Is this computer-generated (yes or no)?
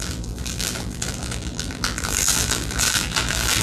yes